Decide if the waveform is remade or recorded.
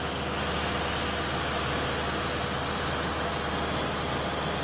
recorded